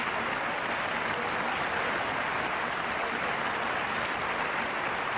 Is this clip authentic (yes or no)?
yes